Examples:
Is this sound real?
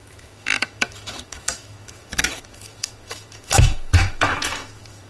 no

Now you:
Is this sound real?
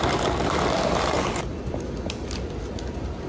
yes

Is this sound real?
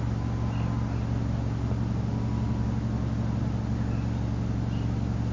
yes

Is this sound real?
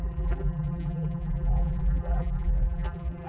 no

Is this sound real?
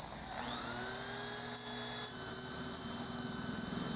yes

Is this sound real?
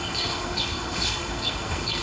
no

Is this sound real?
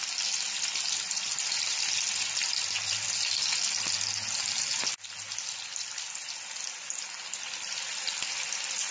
yes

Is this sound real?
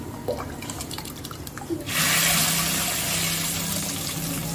yes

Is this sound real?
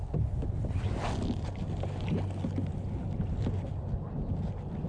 yes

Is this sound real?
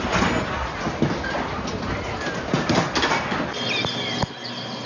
yes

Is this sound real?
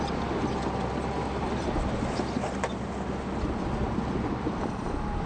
yes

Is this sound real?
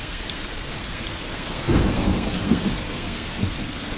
no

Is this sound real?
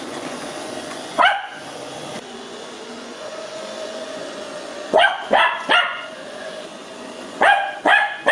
no